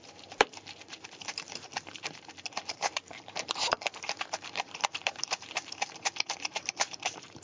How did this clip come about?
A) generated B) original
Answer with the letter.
A